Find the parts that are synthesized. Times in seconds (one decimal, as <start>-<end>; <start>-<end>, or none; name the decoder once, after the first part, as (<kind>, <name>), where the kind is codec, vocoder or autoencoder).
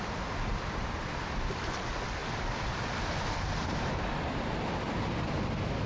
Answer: none